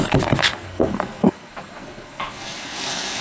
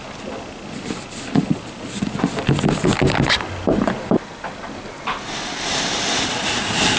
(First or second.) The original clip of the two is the second